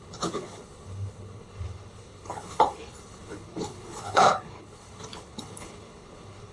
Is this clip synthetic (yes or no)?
yes